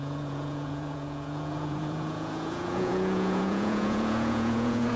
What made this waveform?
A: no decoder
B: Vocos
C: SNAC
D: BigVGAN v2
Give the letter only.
B